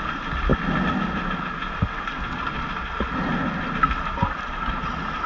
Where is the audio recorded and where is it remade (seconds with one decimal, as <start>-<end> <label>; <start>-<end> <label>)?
0.0-5.3 recorded